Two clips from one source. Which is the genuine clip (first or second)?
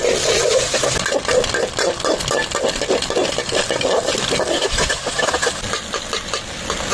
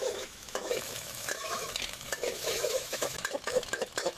first